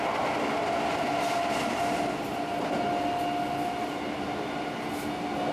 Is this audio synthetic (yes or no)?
no